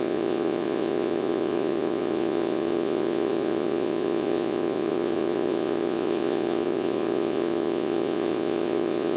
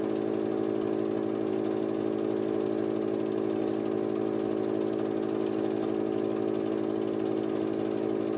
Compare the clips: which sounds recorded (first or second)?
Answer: second